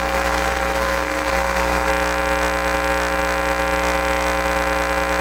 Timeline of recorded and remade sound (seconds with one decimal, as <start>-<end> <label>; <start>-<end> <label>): 0.0-1.9 remade; 1.9-5.2 recorded